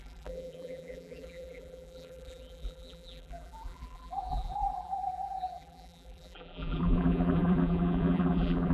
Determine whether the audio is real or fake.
fake